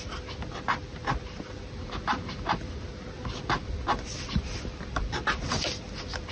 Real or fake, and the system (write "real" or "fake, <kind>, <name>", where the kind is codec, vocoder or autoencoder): real